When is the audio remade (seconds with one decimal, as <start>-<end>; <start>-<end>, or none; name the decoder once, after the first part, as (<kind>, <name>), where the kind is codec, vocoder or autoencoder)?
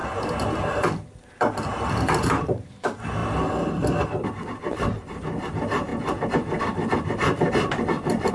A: 0.0-3.2 (vocoder, BigVGAN v2); 4.6-8.3